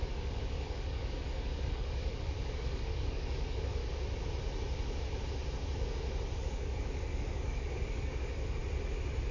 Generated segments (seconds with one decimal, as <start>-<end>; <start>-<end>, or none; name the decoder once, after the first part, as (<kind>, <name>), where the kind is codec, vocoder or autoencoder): 0.0-3.8 (codec, DAC); 6.4-8.6

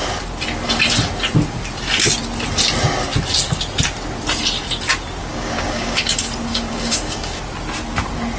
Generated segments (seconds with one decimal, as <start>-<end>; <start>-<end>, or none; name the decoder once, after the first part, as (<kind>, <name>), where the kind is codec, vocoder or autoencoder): 5.2-6.0 (codec, DAC); 6.5-7.4

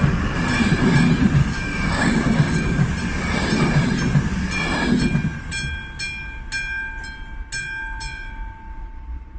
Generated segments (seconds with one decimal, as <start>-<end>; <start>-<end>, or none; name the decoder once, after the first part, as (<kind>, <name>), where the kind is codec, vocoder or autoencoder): 1.4-2.9 (codec, DAC)

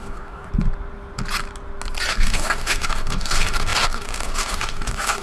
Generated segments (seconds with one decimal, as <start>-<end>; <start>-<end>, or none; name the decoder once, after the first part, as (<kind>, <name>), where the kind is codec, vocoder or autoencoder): 0.0-0.5 (codec, DAC); 2.1-5.2

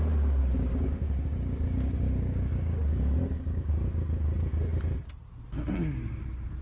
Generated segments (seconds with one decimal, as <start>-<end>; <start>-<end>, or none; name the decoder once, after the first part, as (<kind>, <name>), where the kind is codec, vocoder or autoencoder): 0.4-3.7 (codec, DAC)

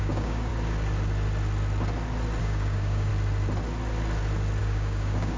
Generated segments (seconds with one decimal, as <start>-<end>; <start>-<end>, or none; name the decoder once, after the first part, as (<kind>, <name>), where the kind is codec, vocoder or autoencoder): 0.0-0.5 (codec, DAC); 2.4-3.1; 4.6-5.4

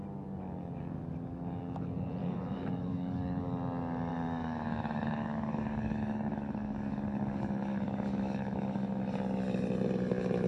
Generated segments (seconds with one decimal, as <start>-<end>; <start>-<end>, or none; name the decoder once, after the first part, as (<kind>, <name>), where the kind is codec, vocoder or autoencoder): 2.2-3.4 (codec, DAC); 4.1-9.0